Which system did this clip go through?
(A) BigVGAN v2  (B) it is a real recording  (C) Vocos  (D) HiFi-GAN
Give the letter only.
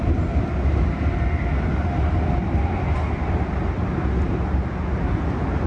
B